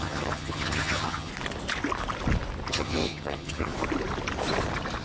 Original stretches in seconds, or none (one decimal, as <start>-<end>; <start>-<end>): 1.3-2.7; 3.7-5.0